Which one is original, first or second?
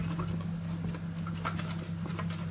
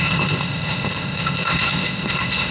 first